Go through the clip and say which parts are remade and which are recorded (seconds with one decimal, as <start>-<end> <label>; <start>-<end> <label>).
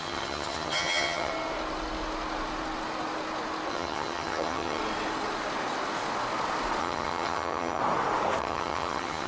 0.0-1.3 remade; 1.3-3.7 recorded; 3.7-4.8 remade; 4.8-6.8 recorded; 6.8-7.8 remade; 7.8-8.4 recorded; 8.4-9.3 remade